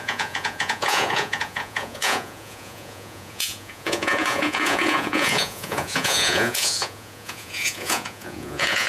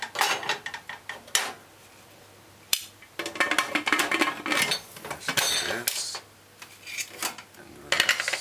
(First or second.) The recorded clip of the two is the second